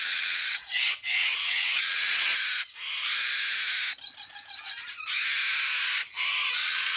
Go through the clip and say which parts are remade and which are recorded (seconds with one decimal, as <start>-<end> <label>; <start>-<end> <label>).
0.0-2.3 remade; 2.3-6.5 recorded; 6.5-7.0 remade

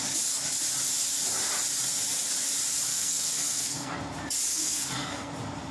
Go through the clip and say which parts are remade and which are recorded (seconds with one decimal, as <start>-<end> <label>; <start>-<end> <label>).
0.0-2.9 recorded; 2.9-4.0 remade; 4.0-4.5 recorded; 4.5-5.3 remade; 5.3-5.7 recorded

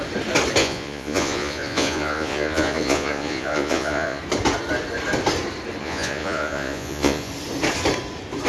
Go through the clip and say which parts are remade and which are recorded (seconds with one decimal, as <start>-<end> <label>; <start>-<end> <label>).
0.0-0.6 recorded; 0.6-4.2 remade; 4.2-5.8 recorded; 5.8-7.3 remade; 7.3-8.5 recorded

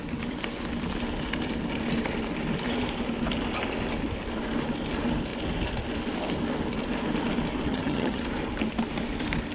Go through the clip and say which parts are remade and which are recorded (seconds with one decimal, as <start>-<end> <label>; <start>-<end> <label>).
0.0-7.7 recorded; 7.7-8.2 remade; 8.2-9.5 recorded

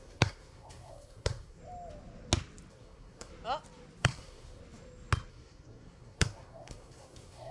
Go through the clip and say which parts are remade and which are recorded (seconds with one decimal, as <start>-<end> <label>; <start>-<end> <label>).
0.0-1.6 remade; 1.6-2.7 recorded; 2.7-3.3 remade; 3.3-4.0 recorded; 4.0-4.6 remade; 4.6-5.3 recorded; 5.3-7.5 remade

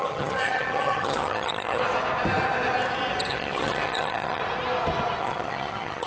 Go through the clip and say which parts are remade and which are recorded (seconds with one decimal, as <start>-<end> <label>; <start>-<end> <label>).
0.0-1.8 remade; 1.8-3.3 recorded; 3.3-4.4 remade; 4.4-5.2 recorded; 5.2-6.1 remade

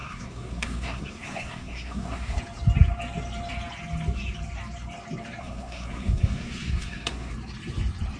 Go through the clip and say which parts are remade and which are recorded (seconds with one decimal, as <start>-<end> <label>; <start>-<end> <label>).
0.0-2.4 remade; 2.4-5.4 recorded; 5.4-7.3 remade; 7.3-8.2 recorded

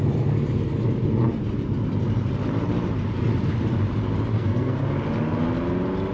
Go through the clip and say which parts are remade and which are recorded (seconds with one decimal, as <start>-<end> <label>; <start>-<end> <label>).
0.0-4.3 recorded; 4.3-4.8 remade; 4.8-6.1 recorded